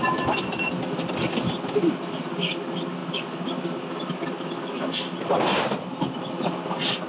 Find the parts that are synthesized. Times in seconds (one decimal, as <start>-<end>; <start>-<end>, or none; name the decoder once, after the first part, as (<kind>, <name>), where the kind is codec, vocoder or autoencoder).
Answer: none